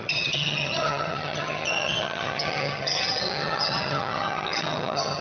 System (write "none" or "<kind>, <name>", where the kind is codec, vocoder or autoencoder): vocoder, HiFi-GAN